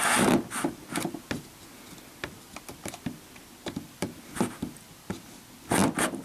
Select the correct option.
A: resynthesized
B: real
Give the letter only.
B